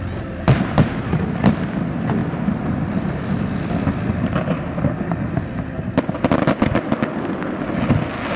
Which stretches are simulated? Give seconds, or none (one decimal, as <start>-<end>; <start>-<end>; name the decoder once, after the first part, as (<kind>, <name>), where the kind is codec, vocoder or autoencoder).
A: none